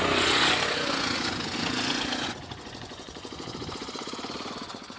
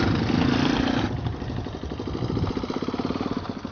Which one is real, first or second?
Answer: second